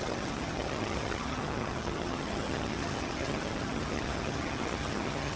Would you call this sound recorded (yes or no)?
no